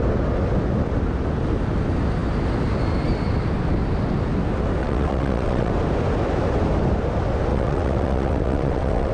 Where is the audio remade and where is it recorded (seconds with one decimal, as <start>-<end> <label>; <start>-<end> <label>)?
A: 0.0-4.8 recorded; 4.8-5.7 remade; 5.7-7.5 recorded; 7.5-9.1 remade